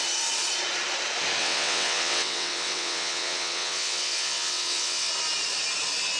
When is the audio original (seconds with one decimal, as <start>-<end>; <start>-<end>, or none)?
0.0-1.4; 5.1-6.2